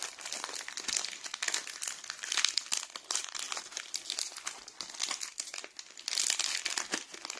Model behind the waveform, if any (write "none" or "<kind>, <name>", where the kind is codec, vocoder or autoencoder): none